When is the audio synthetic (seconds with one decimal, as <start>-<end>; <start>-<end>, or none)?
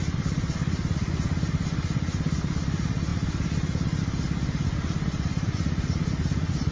none